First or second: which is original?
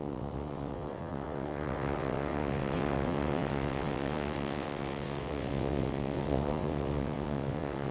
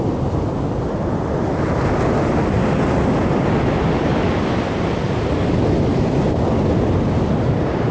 second